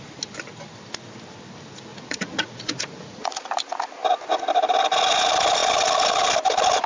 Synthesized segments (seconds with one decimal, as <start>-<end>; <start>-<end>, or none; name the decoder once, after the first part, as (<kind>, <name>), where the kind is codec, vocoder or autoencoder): 1.9-3.4 (vocoder, Vocos)